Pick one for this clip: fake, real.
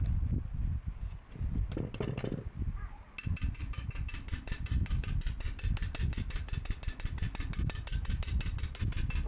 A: real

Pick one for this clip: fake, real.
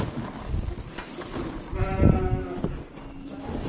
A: real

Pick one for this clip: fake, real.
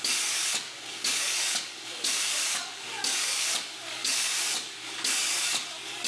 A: fake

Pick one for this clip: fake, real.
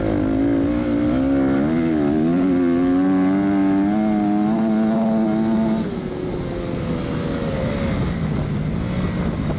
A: real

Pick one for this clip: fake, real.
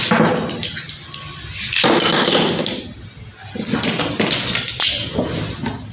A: real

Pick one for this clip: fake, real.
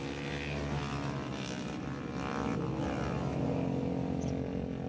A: real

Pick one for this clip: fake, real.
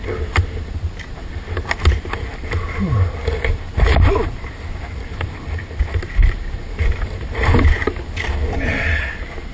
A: real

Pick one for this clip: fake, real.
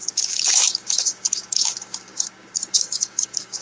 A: fake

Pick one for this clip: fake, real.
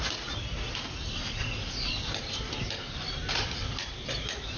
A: real